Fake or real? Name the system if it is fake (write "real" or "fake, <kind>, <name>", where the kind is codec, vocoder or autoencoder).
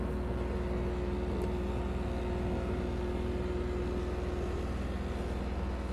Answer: real